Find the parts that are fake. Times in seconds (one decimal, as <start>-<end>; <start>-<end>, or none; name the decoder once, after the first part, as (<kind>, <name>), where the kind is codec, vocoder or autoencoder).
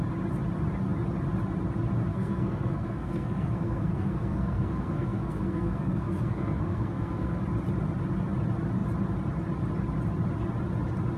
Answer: 2.1-7.4 (codec, SNAC)